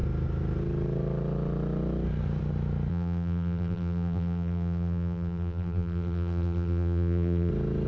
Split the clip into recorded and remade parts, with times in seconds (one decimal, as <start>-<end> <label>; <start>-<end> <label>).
0.0-2.9 recorded; 2.9-7.5 remade; 7.5-7.9 recorded